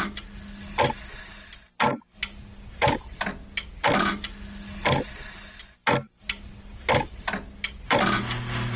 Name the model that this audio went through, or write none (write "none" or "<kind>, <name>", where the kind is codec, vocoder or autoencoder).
none